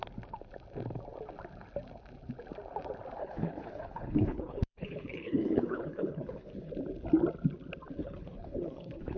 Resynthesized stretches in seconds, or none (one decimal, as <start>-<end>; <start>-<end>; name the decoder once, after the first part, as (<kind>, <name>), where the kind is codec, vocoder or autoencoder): 3.2-6.7 (codec, HILCodec); 8.0-9.2

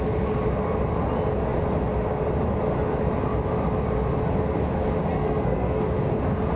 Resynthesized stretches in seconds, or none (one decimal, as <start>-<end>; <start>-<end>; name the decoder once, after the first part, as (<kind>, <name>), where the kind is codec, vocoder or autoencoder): 5.1-5.8 (codec, SNAC)

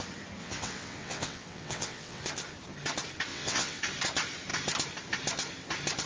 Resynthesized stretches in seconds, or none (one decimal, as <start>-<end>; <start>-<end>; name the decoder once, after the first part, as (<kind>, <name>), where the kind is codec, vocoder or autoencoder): 0.4-2.2 (vocoder, WaveNeXt); 3.3-3.8

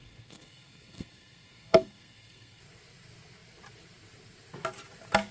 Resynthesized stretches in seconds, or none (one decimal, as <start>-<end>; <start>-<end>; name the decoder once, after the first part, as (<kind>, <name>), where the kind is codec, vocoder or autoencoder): 0.0-2.6 (codec, SNAC)

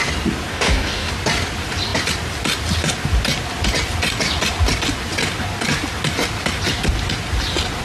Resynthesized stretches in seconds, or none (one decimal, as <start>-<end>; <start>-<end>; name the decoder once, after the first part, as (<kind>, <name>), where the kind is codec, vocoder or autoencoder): 0.5-1.1 (codec, DAC)

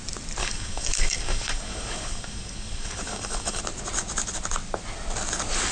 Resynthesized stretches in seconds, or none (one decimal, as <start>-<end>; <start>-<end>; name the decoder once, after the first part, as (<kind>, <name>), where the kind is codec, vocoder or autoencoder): 0.4-3.6 (codec, DAC)

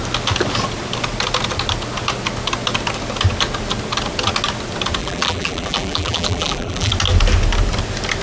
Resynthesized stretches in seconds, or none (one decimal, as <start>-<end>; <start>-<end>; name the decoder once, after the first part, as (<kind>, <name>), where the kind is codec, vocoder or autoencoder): 5.0-6.9 (vocoder, BigVGAN v2)